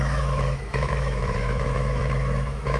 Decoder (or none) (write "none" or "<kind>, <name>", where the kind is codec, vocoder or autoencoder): autoencoder, DAC-VAE